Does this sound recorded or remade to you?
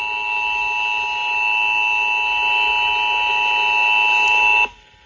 recorded